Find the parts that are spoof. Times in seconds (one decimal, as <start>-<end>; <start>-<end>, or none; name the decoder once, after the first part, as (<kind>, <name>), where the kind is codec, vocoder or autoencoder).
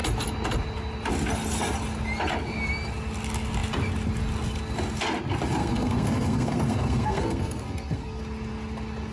5.6-8.2 (codec, SNAC)